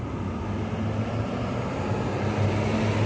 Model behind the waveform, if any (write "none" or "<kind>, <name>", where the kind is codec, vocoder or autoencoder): none